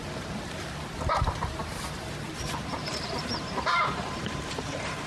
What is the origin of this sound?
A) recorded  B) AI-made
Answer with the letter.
B